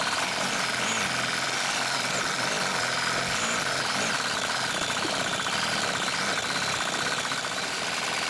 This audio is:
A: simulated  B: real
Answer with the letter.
A